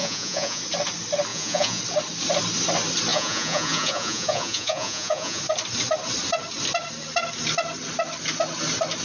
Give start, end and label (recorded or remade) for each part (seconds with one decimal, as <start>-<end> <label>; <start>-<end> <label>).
0.0-0.6 remade; 0.6-1.3 recorded; 1.3-1.8 remade; 1.8-3.1 recorded; 3.1-5.4 remade; 5.4-9.0 recorded